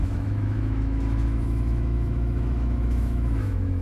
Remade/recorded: remade